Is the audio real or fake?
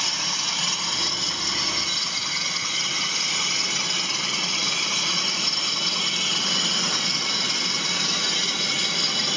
real